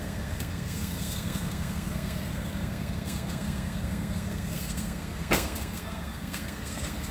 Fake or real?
fake